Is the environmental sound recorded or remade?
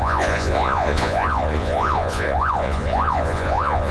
remade